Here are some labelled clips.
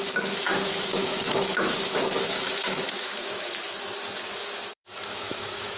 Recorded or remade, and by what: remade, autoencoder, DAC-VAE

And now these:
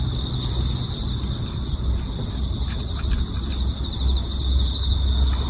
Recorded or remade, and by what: recorded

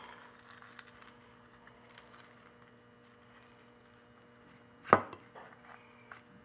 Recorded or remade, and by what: recorded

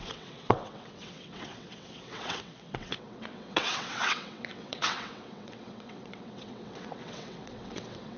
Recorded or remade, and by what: remade, vocoder, WaveNeXt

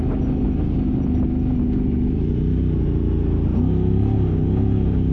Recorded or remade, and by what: recorded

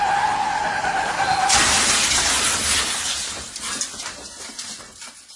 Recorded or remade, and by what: recorded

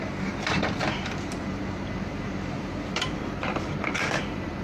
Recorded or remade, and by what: remade, vocoder, BigVGAN v2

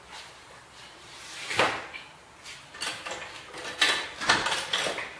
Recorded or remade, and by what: recorded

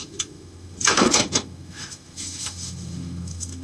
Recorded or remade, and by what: remade, autoencoder, DAC-VAE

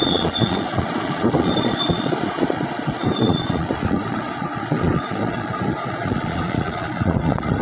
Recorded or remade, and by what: remade, vocoder, Vocos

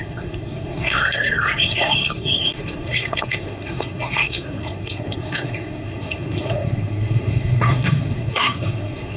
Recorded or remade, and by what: remade, codec, SNAC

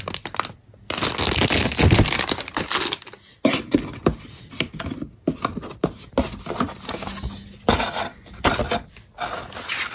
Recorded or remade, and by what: recorded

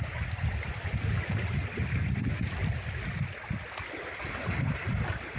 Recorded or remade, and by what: recorded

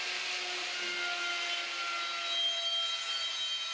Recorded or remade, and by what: recorded